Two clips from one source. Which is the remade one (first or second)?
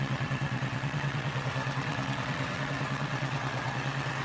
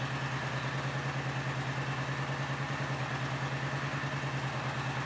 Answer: first